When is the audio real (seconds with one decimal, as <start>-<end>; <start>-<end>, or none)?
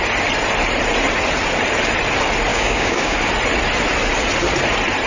0.0-2.5; 3.2-5.1